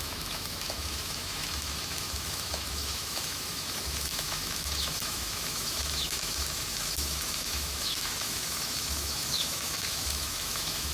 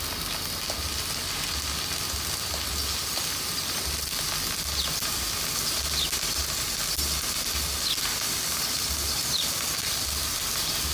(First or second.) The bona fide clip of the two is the second